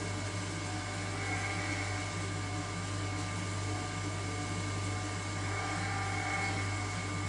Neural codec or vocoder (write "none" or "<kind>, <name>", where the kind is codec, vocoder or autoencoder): none